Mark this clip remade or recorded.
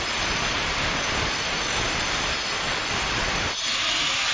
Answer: recorded